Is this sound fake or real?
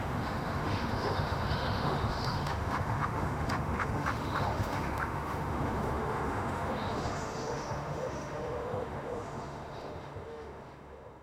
fake